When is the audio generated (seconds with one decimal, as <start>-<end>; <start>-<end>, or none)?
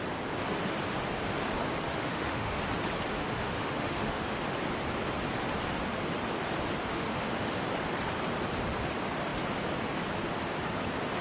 1.9-2.6; 3.2-4.4; 6.9-7.5